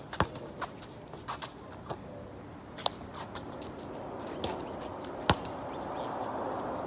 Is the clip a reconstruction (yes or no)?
no